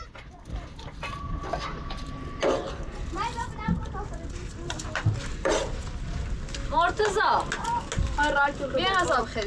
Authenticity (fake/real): real